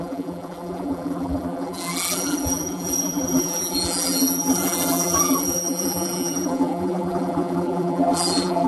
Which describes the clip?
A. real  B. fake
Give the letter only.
B